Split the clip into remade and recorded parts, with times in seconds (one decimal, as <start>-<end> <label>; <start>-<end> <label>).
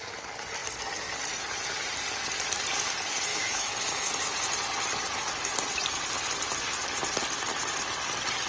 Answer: 0.0-3.3 recorded; 3.3-4.1 remade; 4.1-8.5 recorded